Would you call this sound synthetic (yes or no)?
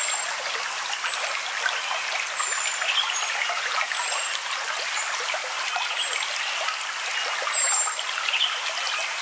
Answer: no